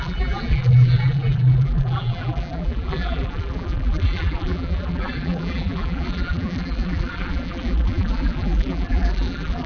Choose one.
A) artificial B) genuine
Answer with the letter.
A